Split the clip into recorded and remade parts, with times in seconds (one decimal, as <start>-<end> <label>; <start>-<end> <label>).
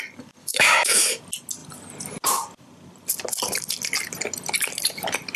0.0-0.4 recorded; 0.4-1.2 remade; 1.2-5.4 recorded